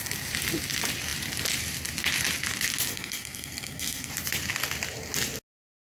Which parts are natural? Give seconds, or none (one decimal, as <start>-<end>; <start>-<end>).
0.0-2.9; 4.1-5.9